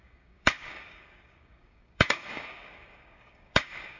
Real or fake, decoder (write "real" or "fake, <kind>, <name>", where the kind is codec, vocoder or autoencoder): fake, codec, DAC